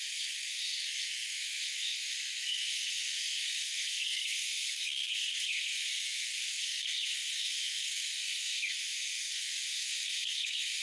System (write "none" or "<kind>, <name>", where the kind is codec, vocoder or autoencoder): codec, SNAC